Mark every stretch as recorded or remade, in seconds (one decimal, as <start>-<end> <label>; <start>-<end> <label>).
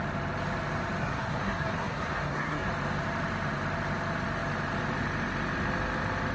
0.0-1.0 recorded; 1.0-2.7 remade; 2.7-6.3 recorded